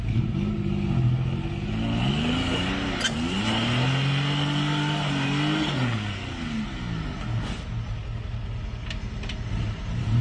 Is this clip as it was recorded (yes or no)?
yes